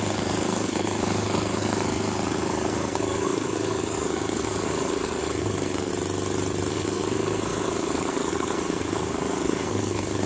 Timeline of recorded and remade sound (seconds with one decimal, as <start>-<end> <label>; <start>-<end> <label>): 0.0-5.9 remade; 5.9-6.7 recorded; 6.7-10.3 remade